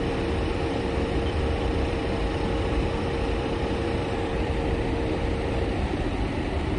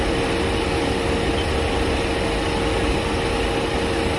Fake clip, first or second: first